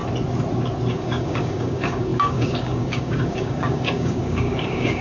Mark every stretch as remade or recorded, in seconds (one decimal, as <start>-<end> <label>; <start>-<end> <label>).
0.0-0.9 recorded; 0.9-5.0 remade